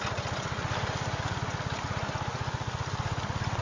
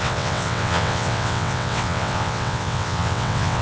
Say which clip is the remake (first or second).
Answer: second